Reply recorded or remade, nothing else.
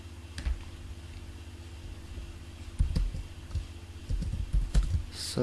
recorded